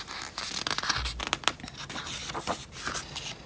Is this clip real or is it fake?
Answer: real